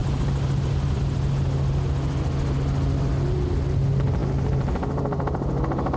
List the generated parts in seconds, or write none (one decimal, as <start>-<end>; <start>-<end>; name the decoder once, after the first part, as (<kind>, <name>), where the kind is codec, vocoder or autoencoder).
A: none